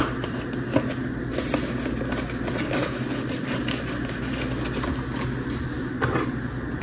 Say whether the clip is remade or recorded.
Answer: recorded